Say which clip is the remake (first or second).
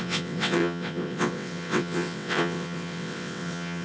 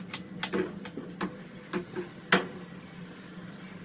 first